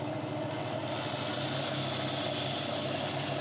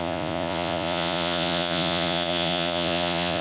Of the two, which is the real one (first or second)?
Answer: first